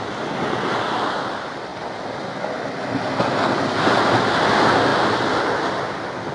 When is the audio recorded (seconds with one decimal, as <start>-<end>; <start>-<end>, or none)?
0.0-6.3